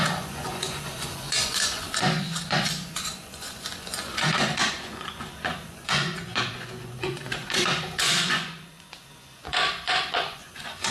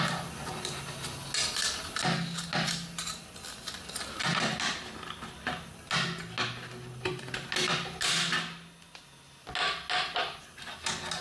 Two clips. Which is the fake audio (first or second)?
first